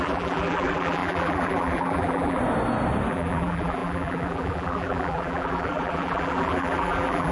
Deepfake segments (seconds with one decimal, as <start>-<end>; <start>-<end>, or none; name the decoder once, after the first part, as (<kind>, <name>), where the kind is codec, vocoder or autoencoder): 0.0-2.4 (vocoder, BigVGAN v2); 3.1-7.3